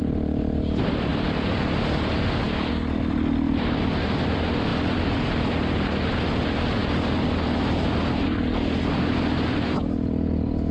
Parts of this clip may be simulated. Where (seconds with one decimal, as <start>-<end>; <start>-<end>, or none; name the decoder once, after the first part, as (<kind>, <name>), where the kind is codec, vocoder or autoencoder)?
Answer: 1.1-2.7 (vocoder, BigVGAN v2)